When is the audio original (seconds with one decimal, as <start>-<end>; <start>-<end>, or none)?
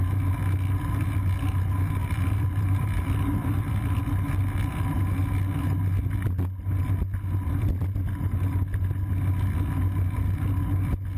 0.0-2.0; 4.0-11.2